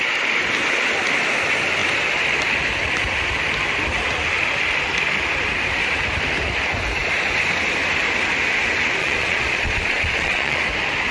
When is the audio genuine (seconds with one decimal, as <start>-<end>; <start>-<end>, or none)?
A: 0.0-9.0; 10.6-11.1